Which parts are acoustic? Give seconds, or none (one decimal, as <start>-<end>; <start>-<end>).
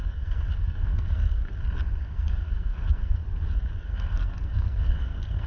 1.4-2.0; 3.2-3.8